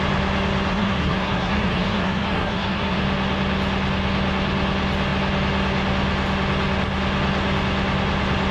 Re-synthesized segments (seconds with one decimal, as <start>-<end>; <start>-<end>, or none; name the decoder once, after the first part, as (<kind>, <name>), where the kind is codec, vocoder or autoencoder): 0.7-3.0 (codec, SNAC)